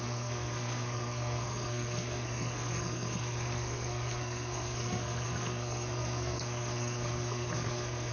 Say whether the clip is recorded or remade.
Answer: remade